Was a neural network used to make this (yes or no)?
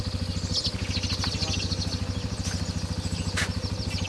no